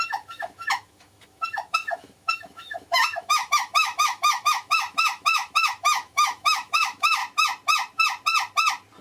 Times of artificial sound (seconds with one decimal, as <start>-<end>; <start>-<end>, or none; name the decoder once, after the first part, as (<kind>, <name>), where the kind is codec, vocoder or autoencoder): 0.0-7.2 (autoencoder, DAC-VAE)